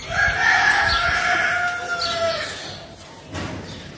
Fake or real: real